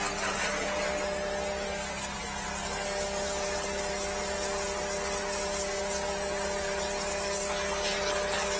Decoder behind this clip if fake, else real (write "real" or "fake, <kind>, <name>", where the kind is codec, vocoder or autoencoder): real